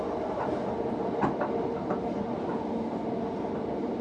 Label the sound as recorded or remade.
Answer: recorded